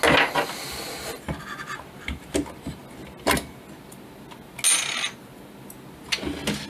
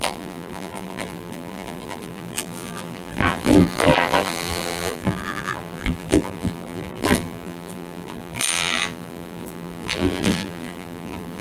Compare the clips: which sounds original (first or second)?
first